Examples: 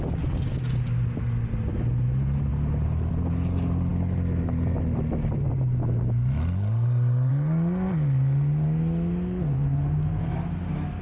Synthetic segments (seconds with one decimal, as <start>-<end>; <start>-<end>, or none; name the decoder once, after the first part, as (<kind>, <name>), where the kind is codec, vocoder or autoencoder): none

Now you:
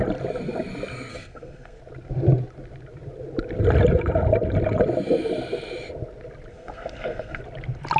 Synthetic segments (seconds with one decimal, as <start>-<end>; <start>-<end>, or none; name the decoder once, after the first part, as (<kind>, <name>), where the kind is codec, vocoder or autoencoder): 1.1-1.8 (codec, SNAC); 6.5-7.4

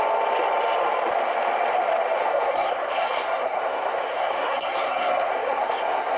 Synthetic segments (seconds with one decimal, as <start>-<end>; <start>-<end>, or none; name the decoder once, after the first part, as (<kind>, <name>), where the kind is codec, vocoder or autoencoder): 2.3-6.2 (codec, SNAC)

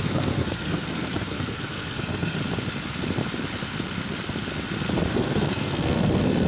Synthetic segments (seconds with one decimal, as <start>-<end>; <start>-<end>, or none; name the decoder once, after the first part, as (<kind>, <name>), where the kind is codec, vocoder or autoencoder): 0.0-2.4 (codec, SNAC); 5.1-6.5

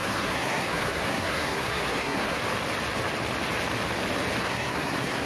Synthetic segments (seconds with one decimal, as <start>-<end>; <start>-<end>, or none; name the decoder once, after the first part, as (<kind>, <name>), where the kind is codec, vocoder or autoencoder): 0.0-2.4 (codec, SNAC); 4.4-5.3

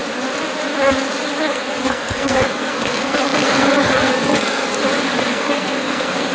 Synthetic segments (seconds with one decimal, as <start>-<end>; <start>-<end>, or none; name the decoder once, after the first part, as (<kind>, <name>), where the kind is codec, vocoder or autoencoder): 1.5-4.8 (codec, SNAC); 5.3-6.3

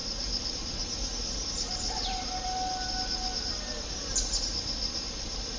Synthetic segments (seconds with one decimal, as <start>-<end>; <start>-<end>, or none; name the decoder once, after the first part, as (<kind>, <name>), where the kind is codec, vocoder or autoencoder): none